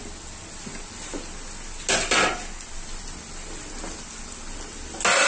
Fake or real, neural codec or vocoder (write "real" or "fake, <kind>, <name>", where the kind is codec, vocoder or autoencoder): real